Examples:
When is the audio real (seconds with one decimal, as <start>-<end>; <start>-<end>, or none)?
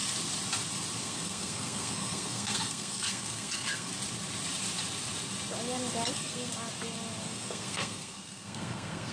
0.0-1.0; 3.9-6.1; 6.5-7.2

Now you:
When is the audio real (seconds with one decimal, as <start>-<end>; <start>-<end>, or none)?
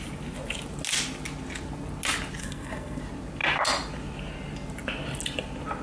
0.0-2.4; 3.0-5.8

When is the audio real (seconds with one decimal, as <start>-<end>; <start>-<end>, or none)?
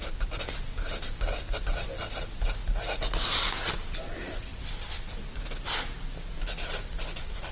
0.0-7.5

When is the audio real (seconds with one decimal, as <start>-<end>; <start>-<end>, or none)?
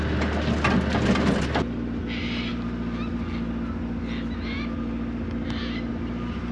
0.0-6.5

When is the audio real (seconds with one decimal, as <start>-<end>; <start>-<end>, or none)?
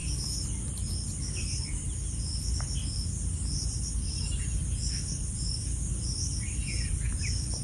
0.0-7.6